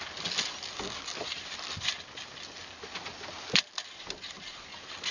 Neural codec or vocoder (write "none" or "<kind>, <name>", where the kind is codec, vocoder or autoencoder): none